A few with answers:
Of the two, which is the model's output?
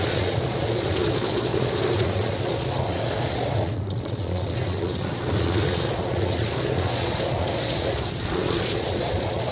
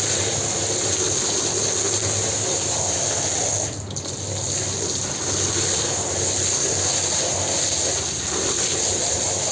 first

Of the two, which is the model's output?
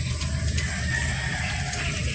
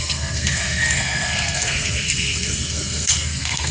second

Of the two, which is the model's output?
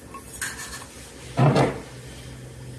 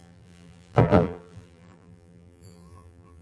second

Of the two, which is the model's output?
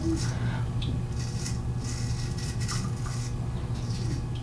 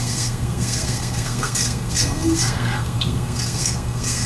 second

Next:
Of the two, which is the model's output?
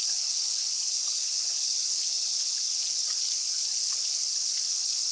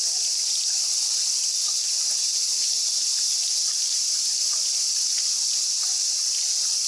first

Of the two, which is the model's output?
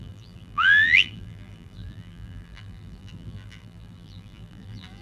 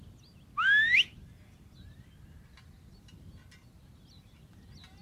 first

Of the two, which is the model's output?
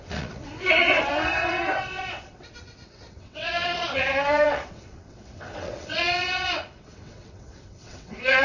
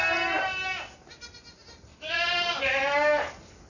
first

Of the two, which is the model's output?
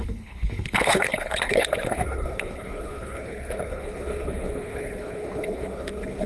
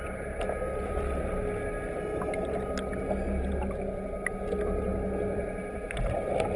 first